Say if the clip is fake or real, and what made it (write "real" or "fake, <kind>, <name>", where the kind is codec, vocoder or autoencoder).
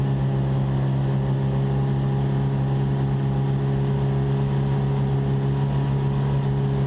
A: real